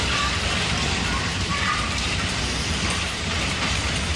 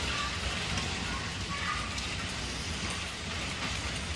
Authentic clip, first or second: second